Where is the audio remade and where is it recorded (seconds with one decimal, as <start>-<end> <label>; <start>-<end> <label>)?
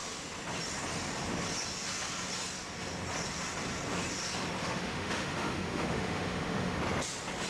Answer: 0.0-4.6 recorded; 4.6-6.8 remade; 6.8-7.5 recorded